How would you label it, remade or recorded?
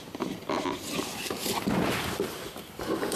recorded